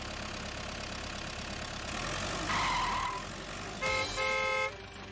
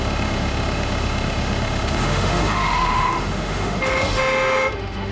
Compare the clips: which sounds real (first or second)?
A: first